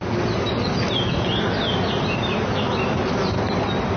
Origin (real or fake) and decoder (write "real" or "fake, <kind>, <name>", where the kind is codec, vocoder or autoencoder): real